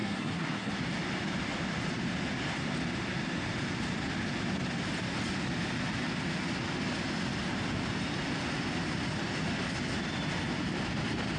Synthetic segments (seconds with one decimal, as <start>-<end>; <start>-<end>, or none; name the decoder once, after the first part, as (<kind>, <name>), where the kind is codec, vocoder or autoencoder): 0.0-0.7 (codec, SNAC)